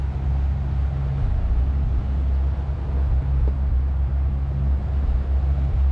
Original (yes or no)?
yes